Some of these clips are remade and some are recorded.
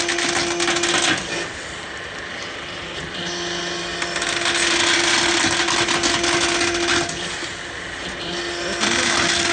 recorded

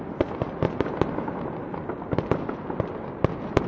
recorded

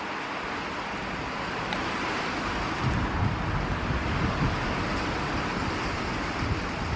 recorded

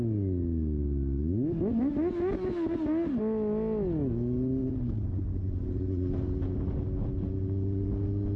recorded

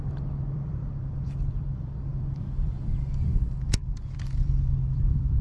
remade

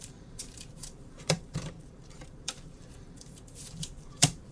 remade